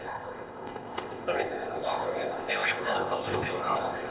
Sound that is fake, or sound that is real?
fake